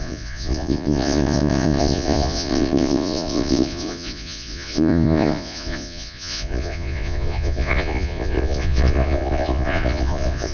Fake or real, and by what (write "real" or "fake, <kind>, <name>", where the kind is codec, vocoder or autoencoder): fake, vocoder, Vocos